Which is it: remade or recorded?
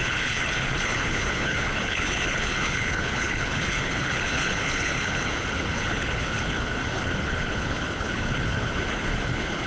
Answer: remade